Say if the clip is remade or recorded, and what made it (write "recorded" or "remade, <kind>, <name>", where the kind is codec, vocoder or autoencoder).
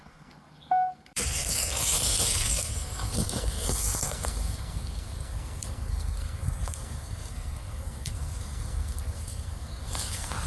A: remade, codec, SNAC